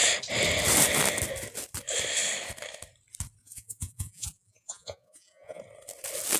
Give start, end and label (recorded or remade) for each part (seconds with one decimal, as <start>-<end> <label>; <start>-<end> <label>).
0.0-3.4 recorded; 3.4-5.6 remade; 5.6-6.4 recorded